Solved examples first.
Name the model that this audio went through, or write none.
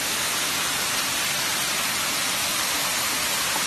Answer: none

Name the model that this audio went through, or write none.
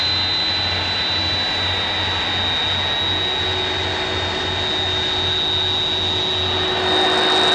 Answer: none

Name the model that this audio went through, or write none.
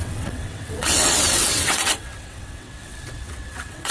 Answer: vocoder, WaveNeXt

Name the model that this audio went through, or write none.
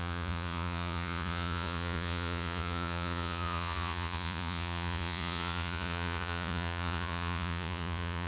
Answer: vocoder, Vocos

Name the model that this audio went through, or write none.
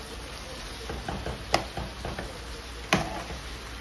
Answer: none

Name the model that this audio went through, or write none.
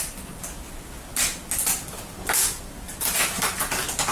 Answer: none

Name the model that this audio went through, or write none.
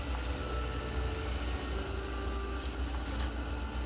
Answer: none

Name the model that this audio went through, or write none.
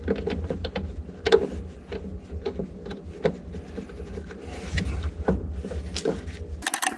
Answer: none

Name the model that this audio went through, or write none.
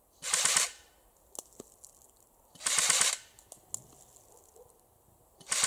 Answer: none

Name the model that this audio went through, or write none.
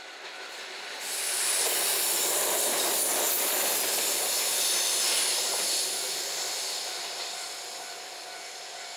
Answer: vocoder, BigVGAN v2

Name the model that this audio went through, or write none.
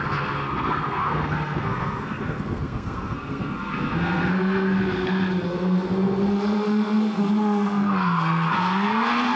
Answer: codec, SNAC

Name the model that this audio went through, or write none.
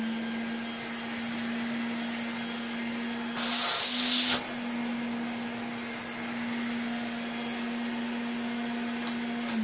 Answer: none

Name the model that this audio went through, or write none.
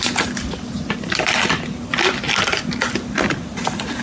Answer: none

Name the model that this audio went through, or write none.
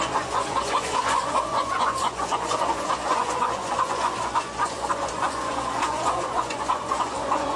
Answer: vocoder, Vocos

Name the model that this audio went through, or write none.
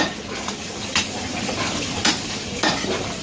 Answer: none